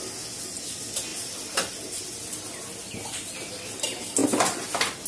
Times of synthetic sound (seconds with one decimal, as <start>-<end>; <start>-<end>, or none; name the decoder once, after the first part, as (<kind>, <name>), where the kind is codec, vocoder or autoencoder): none